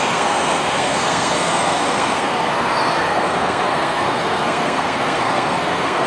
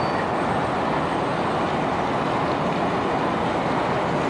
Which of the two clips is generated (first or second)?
first